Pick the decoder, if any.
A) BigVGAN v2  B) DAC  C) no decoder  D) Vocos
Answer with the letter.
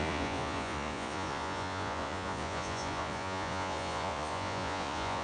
D